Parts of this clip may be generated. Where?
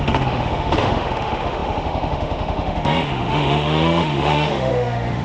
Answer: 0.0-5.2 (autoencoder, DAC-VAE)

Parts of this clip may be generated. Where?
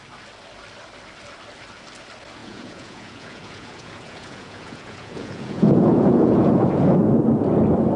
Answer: 2.4-7.0 (vocoder, Vocos)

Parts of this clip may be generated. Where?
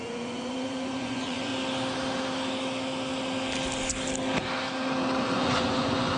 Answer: 0.0-1.5 (vocoder, Vocos); 5.2-6.2